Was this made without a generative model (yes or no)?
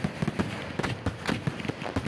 yes